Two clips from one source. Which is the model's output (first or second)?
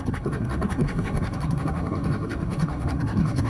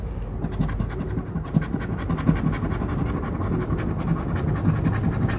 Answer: first